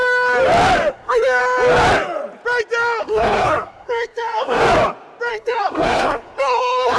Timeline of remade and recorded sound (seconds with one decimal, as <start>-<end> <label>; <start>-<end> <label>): 0.0-0.9 recorded; 0.9-1.4 remade; 1.4-3.0 recorded; 3.0-4.6 remade; 4.6-5.3 recorded; 5.3-7.0 remade